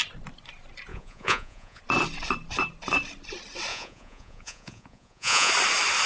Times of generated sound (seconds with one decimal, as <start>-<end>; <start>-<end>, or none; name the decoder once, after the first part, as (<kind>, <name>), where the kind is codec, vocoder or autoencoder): 0.9-1.8 (vocoder, Vocos); 3.7-5.5